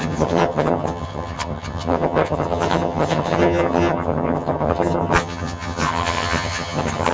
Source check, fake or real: fake